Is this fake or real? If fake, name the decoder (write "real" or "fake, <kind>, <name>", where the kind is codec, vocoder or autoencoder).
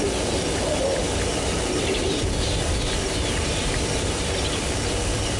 fake, vocoder, BigVGAN v2